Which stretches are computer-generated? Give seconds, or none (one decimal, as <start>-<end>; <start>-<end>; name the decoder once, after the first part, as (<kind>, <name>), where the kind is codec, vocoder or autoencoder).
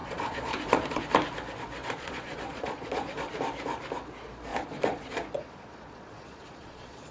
0.0-1.0 (vocoder, Vocos); 1.8-3.3; 4.5-7.1